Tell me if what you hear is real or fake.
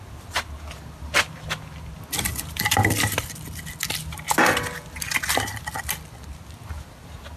real